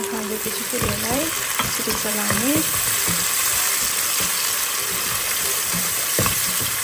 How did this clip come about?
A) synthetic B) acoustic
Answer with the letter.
A